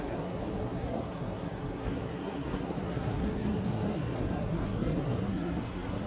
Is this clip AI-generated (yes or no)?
yes